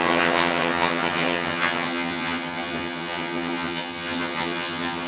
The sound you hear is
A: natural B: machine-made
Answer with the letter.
B